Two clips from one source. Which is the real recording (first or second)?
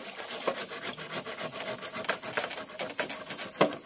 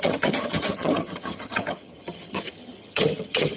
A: first